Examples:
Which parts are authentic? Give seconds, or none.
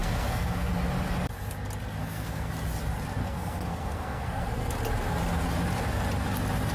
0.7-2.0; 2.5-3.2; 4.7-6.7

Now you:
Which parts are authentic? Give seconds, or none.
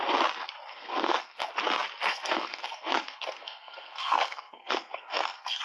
0.0-0.7; 1.5-2.1